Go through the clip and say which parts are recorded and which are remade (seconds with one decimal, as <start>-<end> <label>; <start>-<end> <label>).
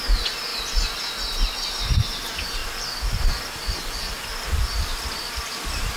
0.0-2.6 recorded; 2.6-6.0 remade